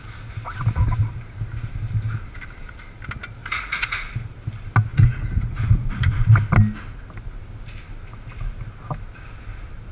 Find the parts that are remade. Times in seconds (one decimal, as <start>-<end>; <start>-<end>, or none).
3.4-4.3; 4.9-6.3